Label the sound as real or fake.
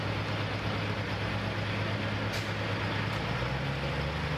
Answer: real